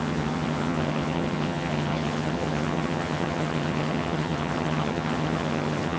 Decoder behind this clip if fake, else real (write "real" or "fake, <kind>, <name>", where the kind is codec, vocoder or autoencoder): fake, vocoder, HiFi-GAN